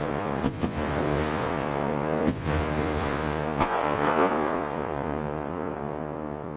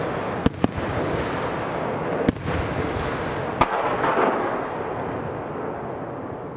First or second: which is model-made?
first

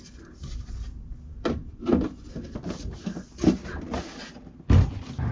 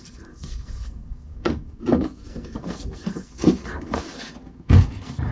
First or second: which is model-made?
second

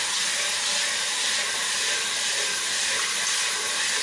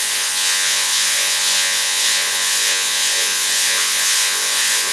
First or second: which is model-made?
second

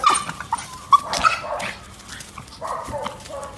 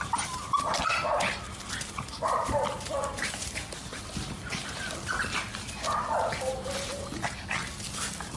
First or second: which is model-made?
second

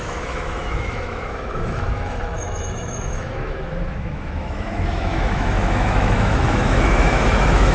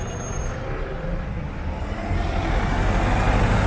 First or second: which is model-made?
first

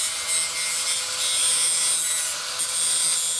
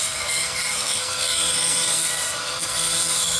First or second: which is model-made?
second